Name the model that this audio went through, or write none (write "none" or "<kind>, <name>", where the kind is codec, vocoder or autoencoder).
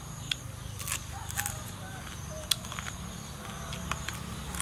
none